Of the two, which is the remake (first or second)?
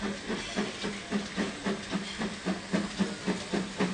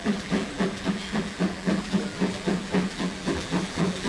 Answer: second